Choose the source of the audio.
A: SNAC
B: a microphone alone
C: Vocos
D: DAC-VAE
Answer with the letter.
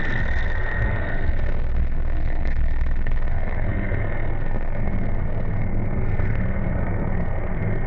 A